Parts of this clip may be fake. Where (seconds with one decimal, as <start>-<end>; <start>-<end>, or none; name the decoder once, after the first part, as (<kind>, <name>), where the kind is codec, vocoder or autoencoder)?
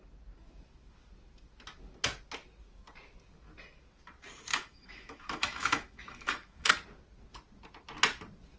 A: 4.5-6.7 (autoencoder, DAC-VAE)